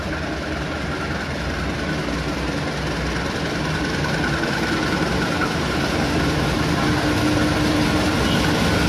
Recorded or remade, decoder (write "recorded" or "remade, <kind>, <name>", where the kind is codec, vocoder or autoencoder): recorded